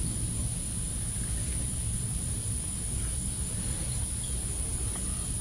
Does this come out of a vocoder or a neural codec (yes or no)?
no